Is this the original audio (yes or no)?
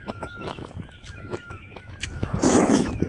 no